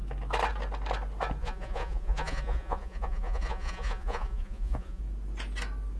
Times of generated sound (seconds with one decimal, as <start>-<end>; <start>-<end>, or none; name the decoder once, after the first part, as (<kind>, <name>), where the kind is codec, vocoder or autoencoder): 1.4-5.0 (vocoder, Vocos)